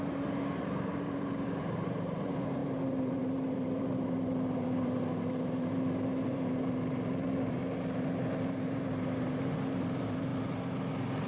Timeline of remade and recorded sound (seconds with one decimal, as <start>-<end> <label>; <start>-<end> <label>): 0.0-10.3 remade; 10.3-11.3 recorded